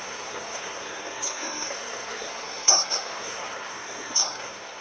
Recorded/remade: remade